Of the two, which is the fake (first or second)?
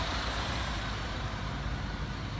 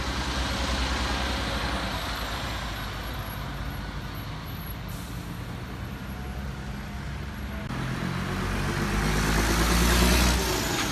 first